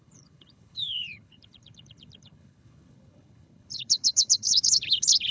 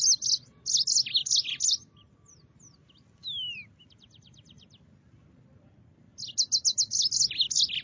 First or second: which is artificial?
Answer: first